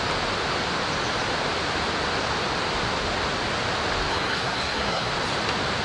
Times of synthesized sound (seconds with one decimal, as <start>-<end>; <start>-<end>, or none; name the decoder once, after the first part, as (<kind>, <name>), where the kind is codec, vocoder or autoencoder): 4.1-5.1 (codec, SNAC)